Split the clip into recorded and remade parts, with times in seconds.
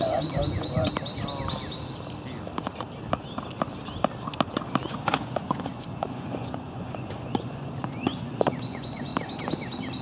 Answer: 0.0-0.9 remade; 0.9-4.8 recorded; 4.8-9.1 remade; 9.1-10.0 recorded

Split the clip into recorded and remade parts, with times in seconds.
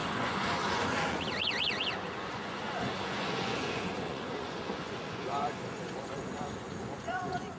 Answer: 0.0-7.6 remade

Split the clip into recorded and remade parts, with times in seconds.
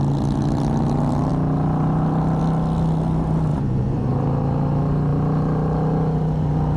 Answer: 0.0-3.5 recorded; 3.5-4.1 remade; 4.1-6.8 recorded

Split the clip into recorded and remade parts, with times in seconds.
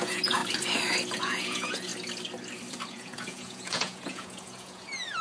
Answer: 0.0-0.4 remade; 0.4-1.2 recorded; 1.2-1.9 remade; 1.9-2.9 recorded; 2.9-5.2 remade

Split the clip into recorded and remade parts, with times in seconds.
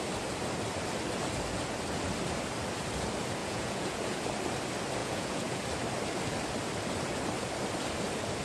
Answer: 0.0-3.4 recorded; 3.4-4.2 remade; 4.2-5.0 recorded; 5.0-5.6 remade; 5.6-8.4 recorded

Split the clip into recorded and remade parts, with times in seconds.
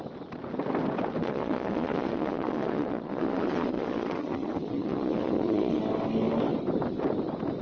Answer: 0.0-1.2 recorded; 1.2-5.8 remade; 5.8-7.6 recorded